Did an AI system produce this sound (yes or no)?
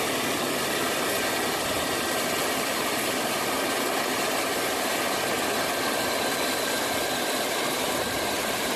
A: no